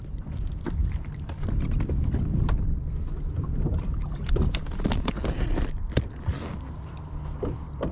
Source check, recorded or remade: remade